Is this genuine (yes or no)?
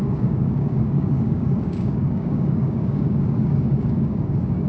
no